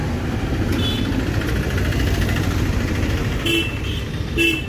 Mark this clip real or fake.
real